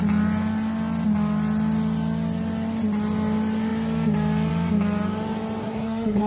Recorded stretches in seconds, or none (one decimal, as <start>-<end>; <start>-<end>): 0.0-5.6